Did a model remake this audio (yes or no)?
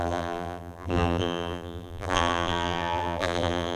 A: yes